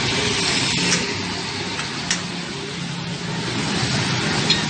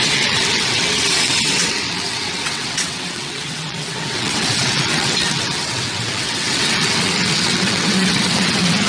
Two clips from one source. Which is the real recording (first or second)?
first